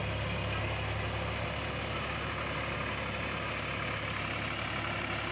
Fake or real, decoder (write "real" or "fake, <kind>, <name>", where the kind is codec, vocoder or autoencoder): real